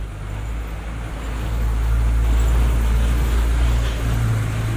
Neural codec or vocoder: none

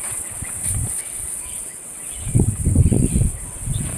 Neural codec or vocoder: vocoder, WaveNeXt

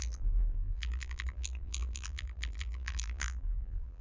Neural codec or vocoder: vocoder, BigVGAN v2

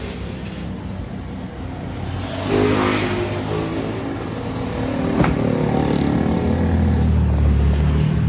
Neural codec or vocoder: none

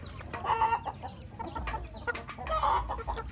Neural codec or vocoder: none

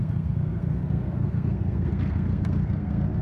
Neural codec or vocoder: codec, SNAC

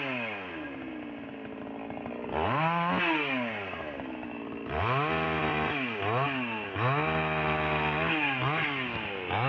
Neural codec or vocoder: none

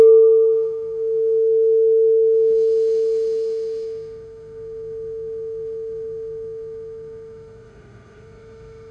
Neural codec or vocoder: autoencoder, DAC-VAE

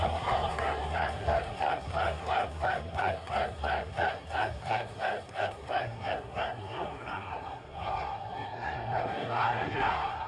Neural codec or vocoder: codec, SNAC